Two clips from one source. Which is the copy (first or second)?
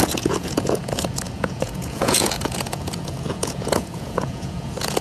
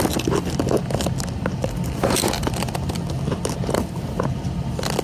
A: first